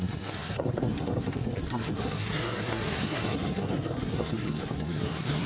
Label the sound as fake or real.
fake